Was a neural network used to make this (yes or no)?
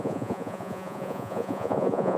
yes